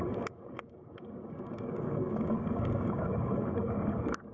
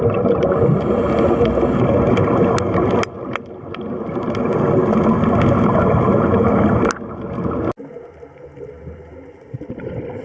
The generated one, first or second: first